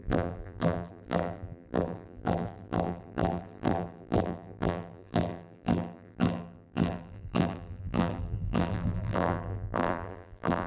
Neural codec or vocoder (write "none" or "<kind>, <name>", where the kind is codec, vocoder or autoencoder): vocoder, BigVGAN v2